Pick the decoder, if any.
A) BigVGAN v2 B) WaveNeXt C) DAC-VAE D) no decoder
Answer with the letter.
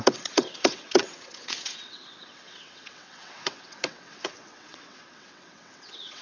B